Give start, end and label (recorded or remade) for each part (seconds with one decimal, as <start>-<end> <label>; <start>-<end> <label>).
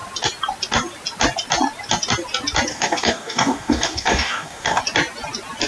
0.0-2.7 recorded; 2.7-4.8 remade; 4.8-5.7 recorded